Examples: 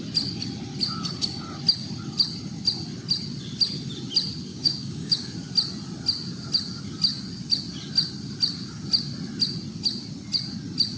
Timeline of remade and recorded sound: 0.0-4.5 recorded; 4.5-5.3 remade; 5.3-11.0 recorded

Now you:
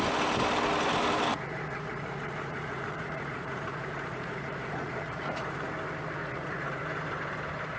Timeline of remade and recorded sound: 0.0-1.3 recorded; 1.3-5.7 remade; 5.7-6.2 recorded; 6.2-6.8 remade; 6.8-7.8 recorded

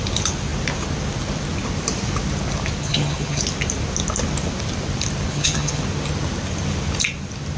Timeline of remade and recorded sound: 0.0-2.8 recorded; 2.8-3.4 remade; 3.4-5.3 recorded; 5.3-5.8 remade; 5.8-7.6 recorded

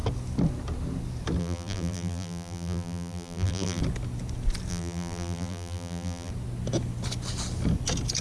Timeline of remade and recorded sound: 0.0-1.4 recorded; 1.4-3.8 remade; 3.8-4.7 recorded; 4.7-6.3 remade; 6.3-8.2 recorded

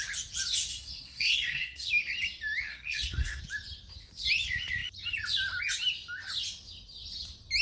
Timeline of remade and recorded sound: 0.0-0.7 recorded; 0.7-1.9 remade; 1.9-2.7 recorded; 2.7-3.4 remade; 3.4-7.6 recorded